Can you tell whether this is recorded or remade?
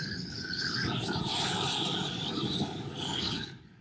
remade